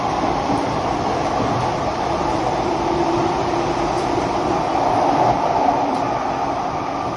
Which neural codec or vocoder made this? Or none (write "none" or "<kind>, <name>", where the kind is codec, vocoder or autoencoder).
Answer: vocoder, BigVGAN v2